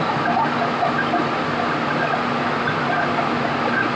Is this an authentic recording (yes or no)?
yes